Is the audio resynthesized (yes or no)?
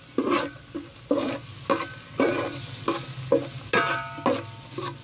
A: no